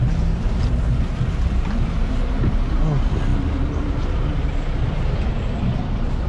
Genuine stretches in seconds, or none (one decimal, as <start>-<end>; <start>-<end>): 0.0-6.3